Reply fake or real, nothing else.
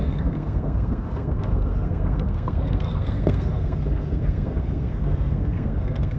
fake